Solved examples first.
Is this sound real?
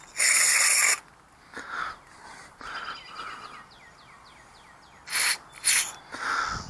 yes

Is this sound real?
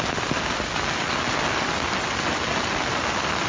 yes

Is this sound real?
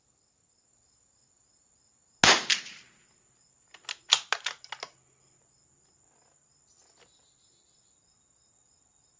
yes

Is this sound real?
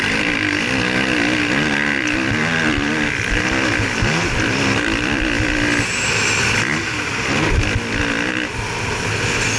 yes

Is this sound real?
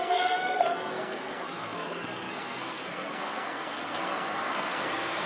no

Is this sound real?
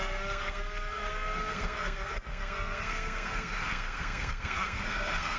no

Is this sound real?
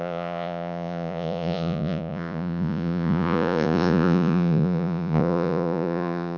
no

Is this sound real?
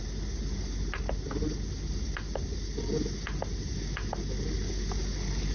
yes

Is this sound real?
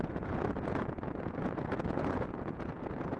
no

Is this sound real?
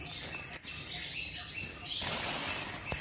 yes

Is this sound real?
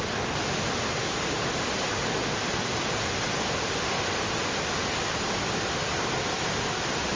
yes